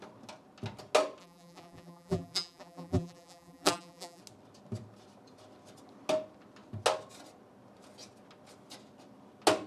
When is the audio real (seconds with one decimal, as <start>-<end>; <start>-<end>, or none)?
0.0-1.2; 4.2-9.7